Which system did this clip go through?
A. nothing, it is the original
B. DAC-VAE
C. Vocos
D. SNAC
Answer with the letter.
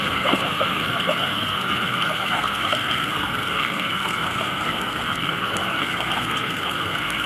D